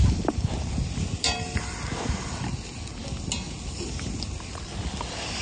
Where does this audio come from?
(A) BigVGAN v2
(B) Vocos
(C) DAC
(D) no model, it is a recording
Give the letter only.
D